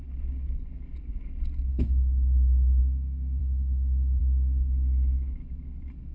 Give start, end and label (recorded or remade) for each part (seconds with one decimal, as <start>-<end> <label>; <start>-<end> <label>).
0.0-1.7 recorded; 1.7-2.8 remade; 2.8-3.4 recorded; 3.4-4.2 remade; 4.2-6.1 recorded